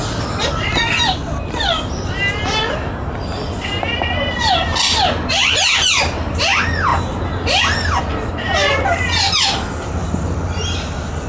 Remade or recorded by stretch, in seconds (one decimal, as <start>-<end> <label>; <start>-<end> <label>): 0.0-11.3 recorded